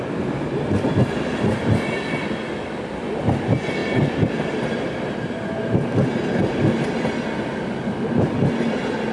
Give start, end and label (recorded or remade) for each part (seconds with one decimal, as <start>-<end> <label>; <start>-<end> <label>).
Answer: 0.0-9.1 recorded